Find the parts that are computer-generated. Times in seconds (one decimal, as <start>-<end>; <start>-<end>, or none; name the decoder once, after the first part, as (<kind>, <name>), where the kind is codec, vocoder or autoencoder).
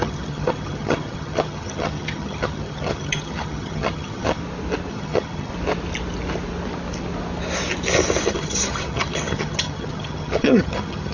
0.0-4.4 (vocoder, HiFi-GAN); 4.9-5.5; 8.2-11.1